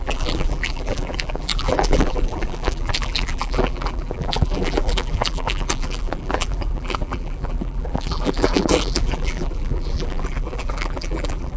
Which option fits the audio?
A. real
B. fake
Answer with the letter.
B